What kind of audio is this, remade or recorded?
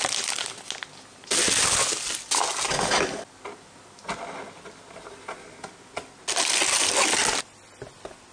recorded